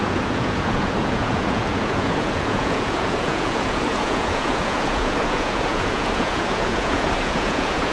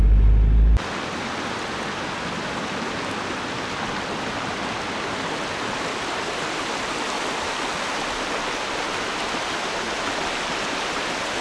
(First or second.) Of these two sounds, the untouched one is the second